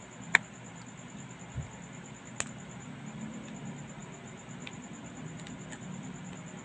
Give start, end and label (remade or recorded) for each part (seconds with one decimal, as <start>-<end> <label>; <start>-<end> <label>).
0.0-6.6 recorded

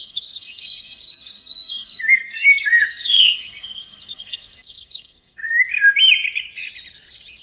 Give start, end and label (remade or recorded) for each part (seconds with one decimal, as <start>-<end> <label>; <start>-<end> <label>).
0.0-5.4 remade; 5.4-7.4 recorded

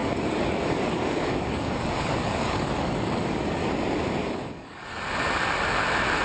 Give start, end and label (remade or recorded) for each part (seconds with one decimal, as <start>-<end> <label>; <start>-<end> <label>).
0.0-3.7 remade; 3.7-4.2 recorded; 4.2-5.0 remade; 5.0-6.2 recorded

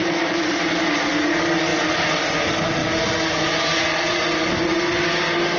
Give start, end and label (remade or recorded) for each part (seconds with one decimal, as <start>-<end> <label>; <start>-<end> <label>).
0.0-1.1 remade; 1.1-2.8 recorded; 2.8-3.5 remade; 3.5-5.6 recorded

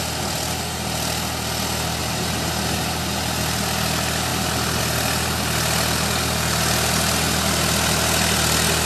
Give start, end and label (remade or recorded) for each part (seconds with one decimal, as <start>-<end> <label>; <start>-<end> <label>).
0.0-2.0 recorded; 2.0-2.5 remade; 2.5-8.9 recorded

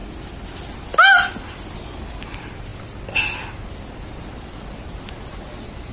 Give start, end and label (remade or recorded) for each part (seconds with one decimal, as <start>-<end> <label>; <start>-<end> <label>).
0.0-5.9 recorded

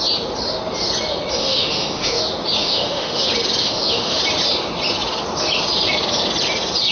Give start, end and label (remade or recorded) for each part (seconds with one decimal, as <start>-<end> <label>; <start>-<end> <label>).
0.0-1.4 recorded; 1.4-2.2 remade; 2.2-2.6 recorded; 2.6-3.2 remade; 3.2-3.6 recorded; 3.6-4.2 remade; 4.2-6.9 recorded